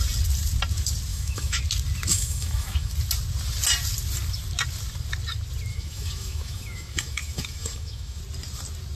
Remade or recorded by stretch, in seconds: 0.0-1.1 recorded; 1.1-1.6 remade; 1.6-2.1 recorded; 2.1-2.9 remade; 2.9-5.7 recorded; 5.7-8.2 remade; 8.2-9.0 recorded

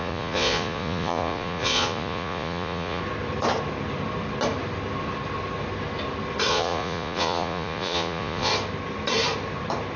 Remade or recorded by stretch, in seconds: 0.0-3.0 remade; 3.0-6.5 recorded; 6.5-8.5 remade; 8.5-10.0 recorded

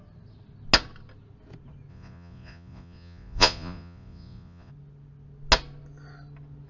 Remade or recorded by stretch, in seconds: 0.0-1.9 recorded; 1.9-4.7 remade; 4.7-6.7 recorded